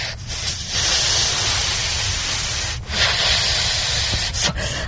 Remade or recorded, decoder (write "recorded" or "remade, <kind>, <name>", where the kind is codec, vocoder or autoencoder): recorded